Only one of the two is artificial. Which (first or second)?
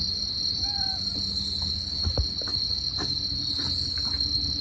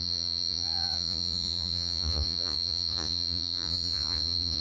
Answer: second